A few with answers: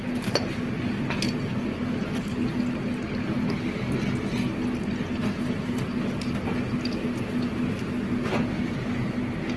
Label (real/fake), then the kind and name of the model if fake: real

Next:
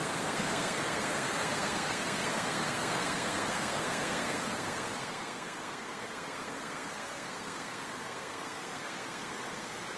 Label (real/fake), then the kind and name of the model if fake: fake, codec, SNAC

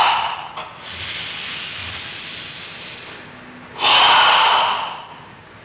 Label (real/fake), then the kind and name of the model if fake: real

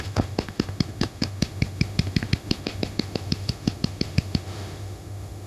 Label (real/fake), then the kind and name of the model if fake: fake, autoencoder, DAC-VAE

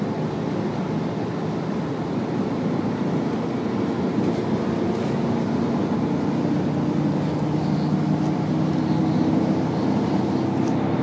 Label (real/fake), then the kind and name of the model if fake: real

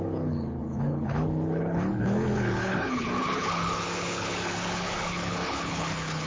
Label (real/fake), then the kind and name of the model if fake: fake, codec, HILCodec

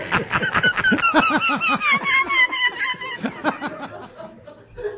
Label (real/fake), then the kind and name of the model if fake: real